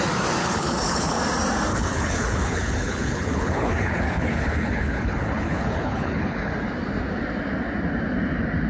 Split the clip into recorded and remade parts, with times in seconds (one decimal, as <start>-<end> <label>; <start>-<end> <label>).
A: 0.0-0.4 recorded; 0.4-1.2 remade; 1.2-1.7 recorded; 1.7-6.5 remade; 6.5-8.7 recorded